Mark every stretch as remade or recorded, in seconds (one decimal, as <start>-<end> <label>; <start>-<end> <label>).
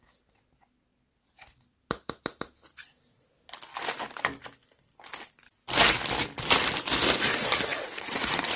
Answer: 0.0-7.7 recorded; 7.7-8.6 remade